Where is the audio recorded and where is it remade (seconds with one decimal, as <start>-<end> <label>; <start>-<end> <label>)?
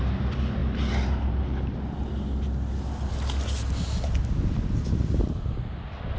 0.0-6.2 recorded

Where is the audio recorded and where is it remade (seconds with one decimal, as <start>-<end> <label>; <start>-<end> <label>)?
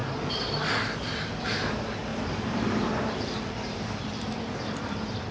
0.0-1.4 recorded; 1.4-5.3 remade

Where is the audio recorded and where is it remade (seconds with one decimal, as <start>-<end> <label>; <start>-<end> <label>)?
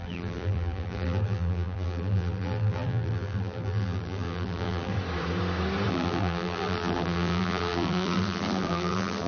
0.0-4.9 remade; 4.9-5.9 recorded; 5.9-9.3 remade